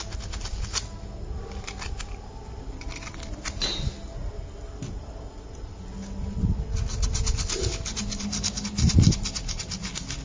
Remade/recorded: recorded